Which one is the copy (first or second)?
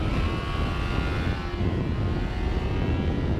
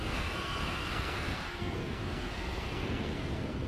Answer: second